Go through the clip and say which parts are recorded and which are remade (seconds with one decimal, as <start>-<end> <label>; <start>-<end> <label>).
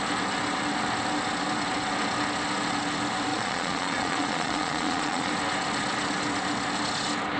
0.0-3.3 recorded; 3.3-5.3 remade; 5.3-7.4 recorded